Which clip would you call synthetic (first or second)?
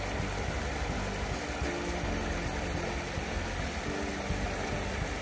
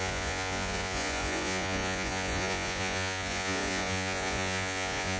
second